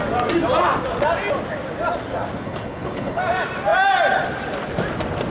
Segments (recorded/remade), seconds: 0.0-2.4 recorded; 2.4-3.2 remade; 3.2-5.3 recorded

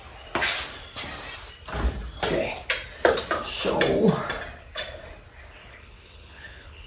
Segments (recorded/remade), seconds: 0.0-5.6 recorded; 5.6-6.9 remade

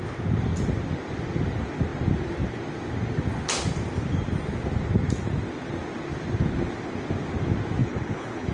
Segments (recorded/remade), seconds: 0.0-7.8 recorded; 7.8-8.5 remade